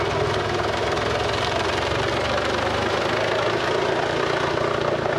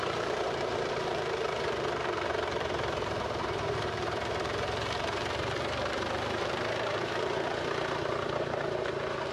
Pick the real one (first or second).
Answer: first